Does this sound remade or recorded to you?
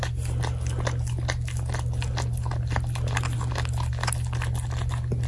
recorded